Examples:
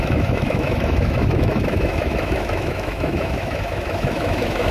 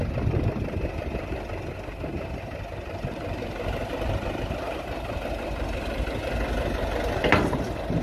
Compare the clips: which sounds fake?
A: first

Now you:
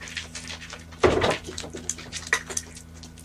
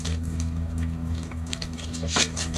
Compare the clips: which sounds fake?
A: second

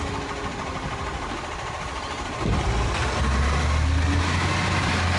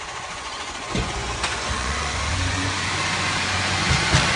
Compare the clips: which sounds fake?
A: second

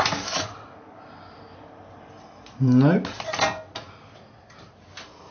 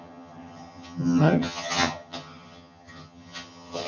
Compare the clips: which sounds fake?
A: second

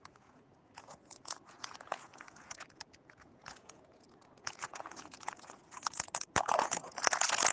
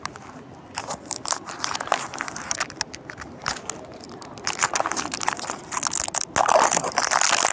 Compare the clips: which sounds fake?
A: first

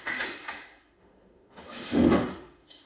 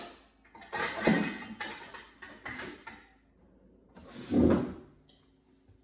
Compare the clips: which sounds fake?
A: first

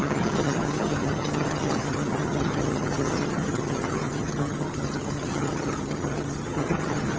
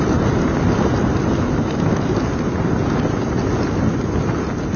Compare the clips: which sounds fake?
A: first